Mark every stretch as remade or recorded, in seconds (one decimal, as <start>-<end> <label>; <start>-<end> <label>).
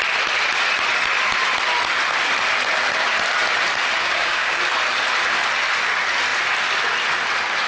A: 0.0-4.0 recorded; 4.0-4.6 remade; 4.6-7.7 recorded